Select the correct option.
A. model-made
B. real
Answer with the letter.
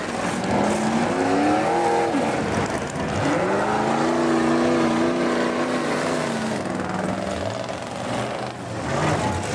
B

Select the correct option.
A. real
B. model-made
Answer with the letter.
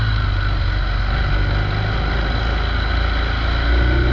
A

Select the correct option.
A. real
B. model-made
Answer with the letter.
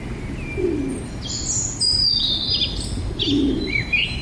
A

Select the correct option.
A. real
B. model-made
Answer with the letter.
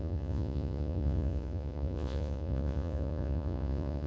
B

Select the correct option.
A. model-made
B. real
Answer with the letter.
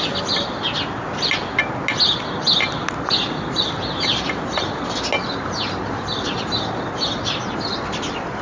B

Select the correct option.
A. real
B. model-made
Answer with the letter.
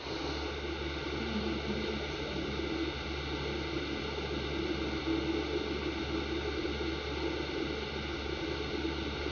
A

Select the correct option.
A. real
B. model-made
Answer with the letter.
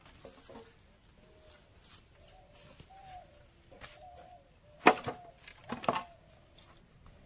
A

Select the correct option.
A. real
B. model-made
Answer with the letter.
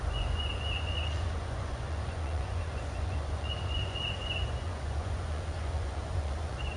B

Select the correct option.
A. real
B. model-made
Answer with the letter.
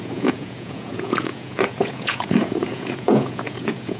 B